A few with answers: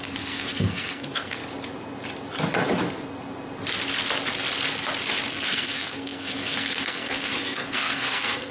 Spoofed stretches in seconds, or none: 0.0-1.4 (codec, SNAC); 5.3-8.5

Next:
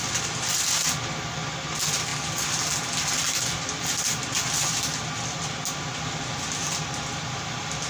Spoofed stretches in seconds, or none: none

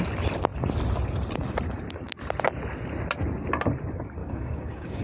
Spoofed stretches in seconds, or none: 4.2-5.0 (codec, DAC)